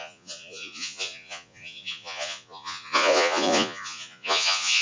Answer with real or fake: fake